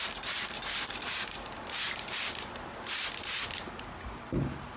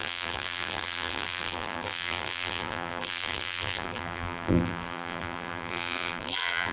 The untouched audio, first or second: first